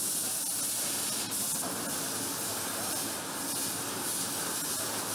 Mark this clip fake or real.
real